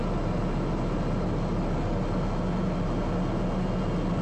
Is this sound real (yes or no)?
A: yes